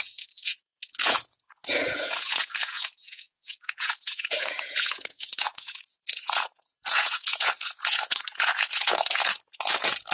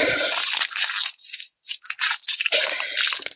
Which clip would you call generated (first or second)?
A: first